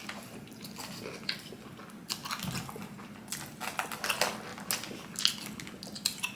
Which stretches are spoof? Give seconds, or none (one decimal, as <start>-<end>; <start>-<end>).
none